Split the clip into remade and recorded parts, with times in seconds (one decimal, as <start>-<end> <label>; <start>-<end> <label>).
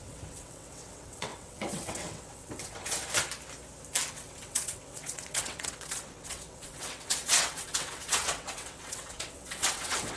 0.0-3.0 remade; 3.0-4.1 recorded; 4.1-10.2 remade